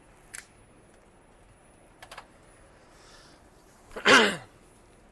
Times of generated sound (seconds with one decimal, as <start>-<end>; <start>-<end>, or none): 1.6-4.6